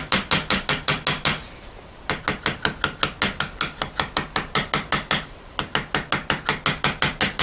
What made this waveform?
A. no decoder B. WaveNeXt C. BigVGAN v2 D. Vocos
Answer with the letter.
A